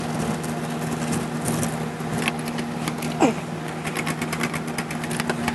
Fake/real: real